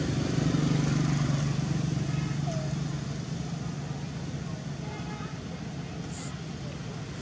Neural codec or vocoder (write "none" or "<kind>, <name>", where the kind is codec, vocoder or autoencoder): none